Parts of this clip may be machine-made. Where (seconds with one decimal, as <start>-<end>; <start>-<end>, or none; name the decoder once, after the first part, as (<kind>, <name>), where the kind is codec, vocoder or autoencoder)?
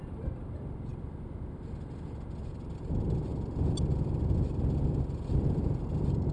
none